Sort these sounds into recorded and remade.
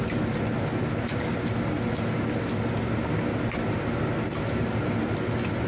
recorded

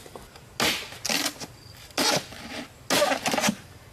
recorded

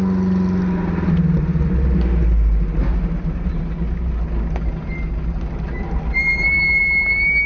recorded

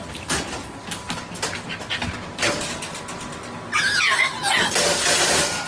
recorded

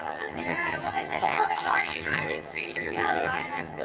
remade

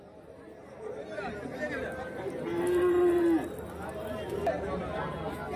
recorded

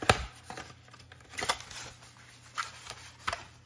recorded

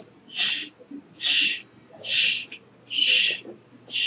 recorded